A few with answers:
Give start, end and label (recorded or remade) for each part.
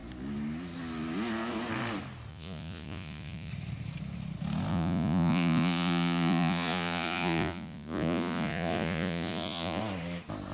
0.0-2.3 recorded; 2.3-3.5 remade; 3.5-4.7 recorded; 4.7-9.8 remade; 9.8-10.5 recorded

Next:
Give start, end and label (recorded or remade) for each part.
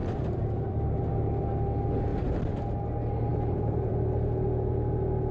0.0-1.1 remade; 1.1-3.3 recorded; 3.3-3.9 remade; 3.9-5.3 recorded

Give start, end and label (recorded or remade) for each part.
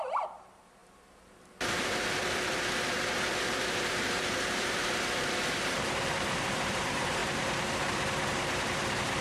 0.0-9.2 remade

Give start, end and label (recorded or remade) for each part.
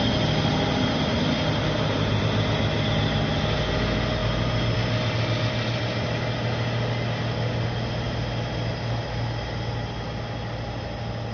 0.0-11.3 recorded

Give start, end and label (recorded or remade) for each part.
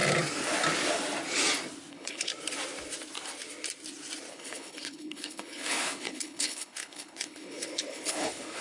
0.0-1.9 recorded; 1.9-2.3 remade; 2.3-4.3 recorded; 4.3-8.6 remade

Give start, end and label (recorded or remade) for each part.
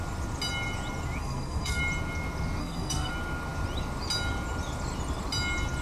0.0-1.2 recorded; 1.2-1.8 remade; 1.8-2.6 recorded; 2.6-3.1 remade; 3.1-5.8 recorded